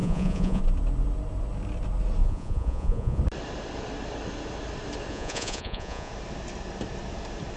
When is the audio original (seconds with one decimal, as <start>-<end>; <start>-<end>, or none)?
0.6-2.2; 3.2-5.1; 6.1-7.6